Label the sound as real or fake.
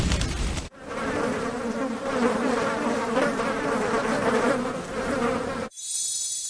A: fake